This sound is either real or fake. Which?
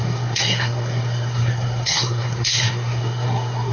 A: fake